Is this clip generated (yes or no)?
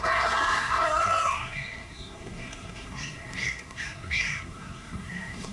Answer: yes